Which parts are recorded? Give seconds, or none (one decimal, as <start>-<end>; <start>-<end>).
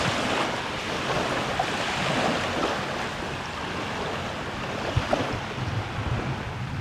0.0-6.8